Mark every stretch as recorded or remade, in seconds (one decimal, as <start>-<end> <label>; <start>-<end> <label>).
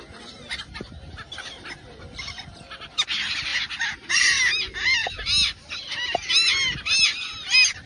0.0-7.9 recorded